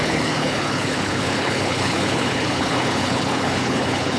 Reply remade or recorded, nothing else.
remade